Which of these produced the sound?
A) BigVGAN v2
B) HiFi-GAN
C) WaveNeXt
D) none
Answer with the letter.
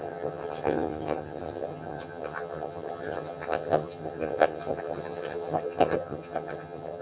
B